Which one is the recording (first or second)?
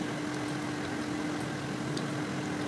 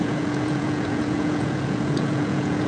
first